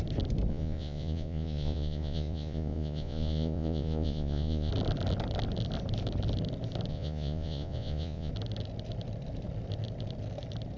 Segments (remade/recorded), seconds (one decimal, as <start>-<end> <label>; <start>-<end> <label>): 0.0-0.5 recorded; 0.5-4.7 remade; 4.7-6.9 recorded; 6.9-8.3 remade; 8.3-10.8 recorded